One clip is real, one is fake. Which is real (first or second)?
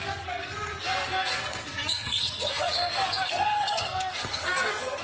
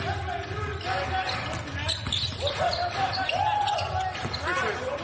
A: second